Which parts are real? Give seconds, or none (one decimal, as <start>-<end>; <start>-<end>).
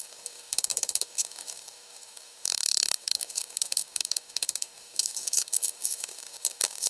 none